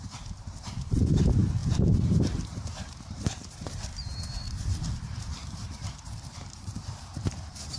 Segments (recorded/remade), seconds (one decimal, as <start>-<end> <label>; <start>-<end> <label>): 0.0-7.8 remade

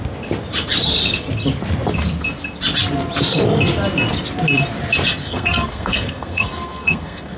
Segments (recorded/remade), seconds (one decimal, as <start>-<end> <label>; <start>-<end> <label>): 0.0-5.2 recorded; 5.2-7.4 remade

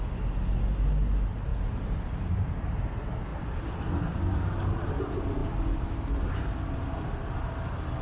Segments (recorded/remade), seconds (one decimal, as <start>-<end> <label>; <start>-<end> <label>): 0.0-3.3 recorded; 3.3-4.0 remade; 4.0-8.0 recorded

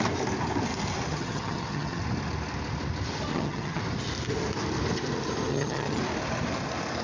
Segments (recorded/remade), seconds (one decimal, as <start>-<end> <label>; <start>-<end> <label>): 0.0-1.1 recorded; 1.1-2.0 remade; 2.0-3.3 recorded; 3.3-3.8 remade; 3.8-5.5 recorded; 5.5-6.0 remade; 6.0-7.0 recorded